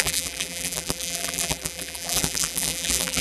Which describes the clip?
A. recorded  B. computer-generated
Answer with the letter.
B